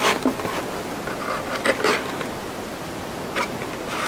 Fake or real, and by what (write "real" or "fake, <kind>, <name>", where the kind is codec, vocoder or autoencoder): real